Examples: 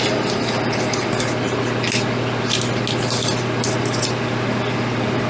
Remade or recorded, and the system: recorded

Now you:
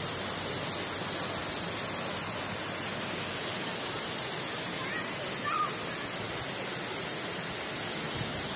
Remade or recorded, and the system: recorded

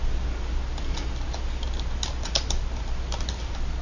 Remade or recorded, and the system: recorded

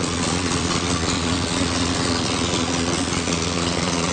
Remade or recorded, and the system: remade, vocoder, Vocos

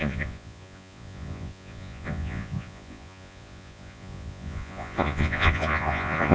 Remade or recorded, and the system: remade, vocoder, Vocos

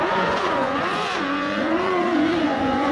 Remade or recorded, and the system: remade, vocoder, Vocos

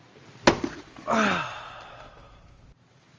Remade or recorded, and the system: recorded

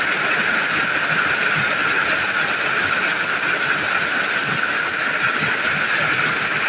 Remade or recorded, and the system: recorded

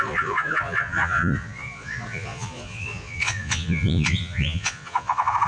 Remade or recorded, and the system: remade, vocoder, Vocos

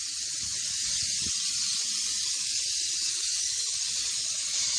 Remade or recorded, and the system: recorded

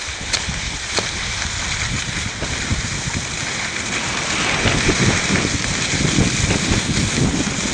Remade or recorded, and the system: recorded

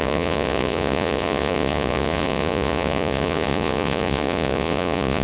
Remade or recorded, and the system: remade, vocoder, Vocos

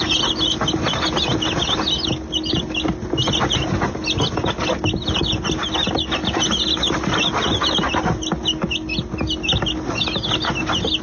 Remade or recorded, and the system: recorded